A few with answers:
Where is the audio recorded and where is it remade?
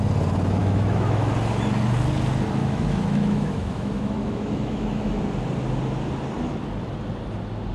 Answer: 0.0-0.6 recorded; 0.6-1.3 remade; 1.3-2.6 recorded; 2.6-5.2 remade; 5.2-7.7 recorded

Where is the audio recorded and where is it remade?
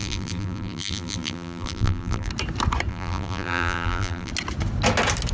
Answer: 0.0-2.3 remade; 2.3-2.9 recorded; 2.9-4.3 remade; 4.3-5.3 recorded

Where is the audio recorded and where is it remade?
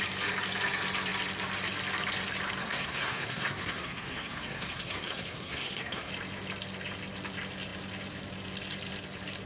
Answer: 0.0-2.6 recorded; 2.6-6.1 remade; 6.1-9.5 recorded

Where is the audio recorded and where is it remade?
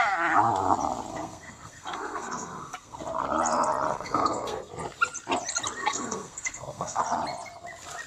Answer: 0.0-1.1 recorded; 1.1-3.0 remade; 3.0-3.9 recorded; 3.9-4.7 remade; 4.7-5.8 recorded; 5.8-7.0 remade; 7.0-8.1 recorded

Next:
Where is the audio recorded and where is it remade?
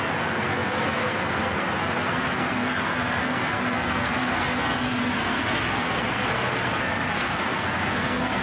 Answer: 0.0-8.4 remade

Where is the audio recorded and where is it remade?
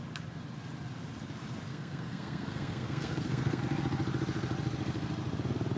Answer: 0.0-1.7 recorded; 1.7-3.6 remade; 3.6-5.8 recorded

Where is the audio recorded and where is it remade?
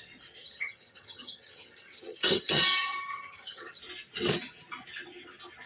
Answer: 0.0-0.4 recorded; 0.4-3.8 remade; 3.8-5.7 recorded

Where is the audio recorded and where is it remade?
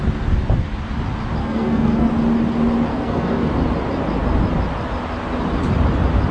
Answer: 0.0-1.4 recorded; 1.4-2.1 remade; 2.1-2.9 recorded; 2.9-3.5 remade; 3.5-6.3 recorded